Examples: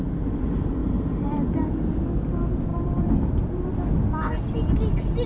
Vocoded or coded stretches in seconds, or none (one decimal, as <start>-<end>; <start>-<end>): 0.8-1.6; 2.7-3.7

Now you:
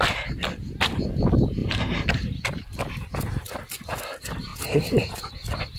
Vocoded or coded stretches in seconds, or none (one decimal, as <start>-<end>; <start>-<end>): 1.6-2.8; 4.5-5.3

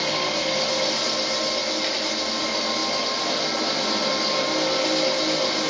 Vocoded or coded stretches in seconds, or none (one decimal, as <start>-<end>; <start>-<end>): none